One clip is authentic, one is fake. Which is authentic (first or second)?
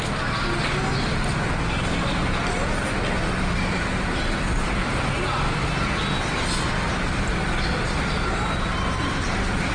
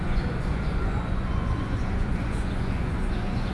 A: first